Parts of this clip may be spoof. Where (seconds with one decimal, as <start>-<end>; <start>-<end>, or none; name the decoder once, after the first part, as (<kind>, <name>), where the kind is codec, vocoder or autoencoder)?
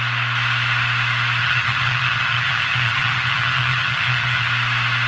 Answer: 1.4-4.5 (vocoder, HiFi-GAN)